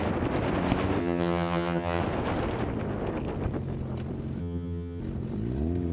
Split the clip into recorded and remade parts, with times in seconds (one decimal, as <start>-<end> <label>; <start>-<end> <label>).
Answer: 0.0-1.0 recorded; 1.0-2.0 remade; 2.0-4.4 recorded; 4.4-5.0 remade; 5.0-5.9 recorded